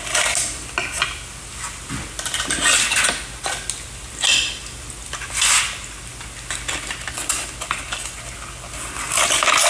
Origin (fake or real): real